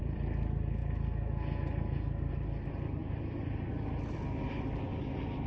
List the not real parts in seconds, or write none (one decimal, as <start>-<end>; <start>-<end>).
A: 0.0-4.9